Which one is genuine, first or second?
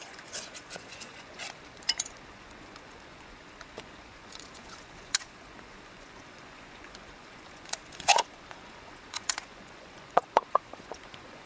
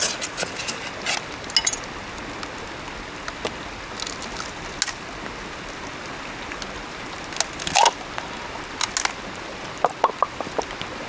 second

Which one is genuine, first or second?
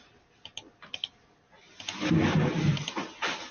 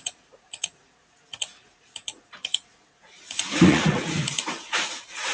first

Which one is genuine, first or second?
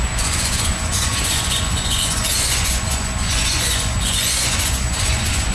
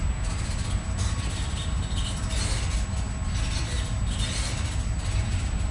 second